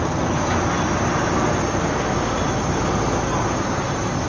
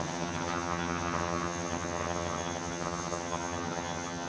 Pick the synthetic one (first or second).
second